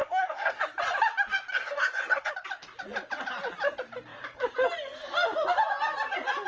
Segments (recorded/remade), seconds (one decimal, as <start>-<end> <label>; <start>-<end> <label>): 0.0-0.6 remade; 0.6-1.5 recorded; 1.5-2.3 remade; 2.3-6.5 recorded